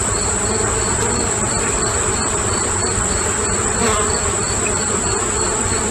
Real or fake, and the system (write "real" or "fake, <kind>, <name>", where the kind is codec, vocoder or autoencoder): fake, vocoder, BigVGAN v2